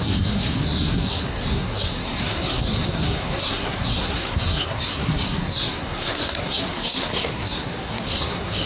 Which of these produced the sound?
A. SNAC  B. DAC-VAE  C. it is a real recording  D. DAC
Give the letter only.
A